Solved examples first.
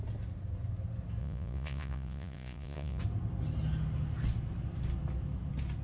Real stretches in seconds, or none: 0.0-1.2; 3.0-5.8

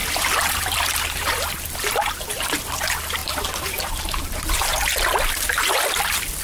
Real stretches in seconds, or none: 2.1-6.4

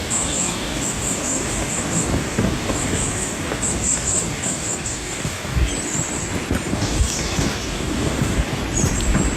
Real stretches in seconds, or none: 5.7-6.7; 8.6-9.4

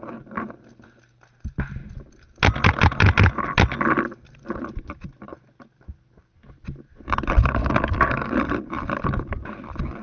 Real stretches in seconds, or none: 0.0-7.6; 8.3-10.0

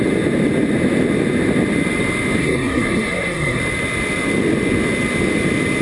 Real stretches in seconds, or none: 0.0-2.4; 3.6-5.8

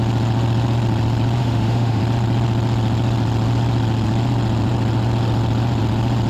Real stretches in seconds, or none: 0.0-1.4; 2.0-6.3